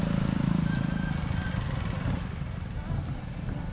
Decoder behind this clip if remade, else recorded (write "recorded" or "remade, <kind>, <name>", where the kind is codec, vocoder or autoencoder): recorded